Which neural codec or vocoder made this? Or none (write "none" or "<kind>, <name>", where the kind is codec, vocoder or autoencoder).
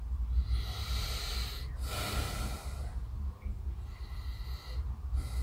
none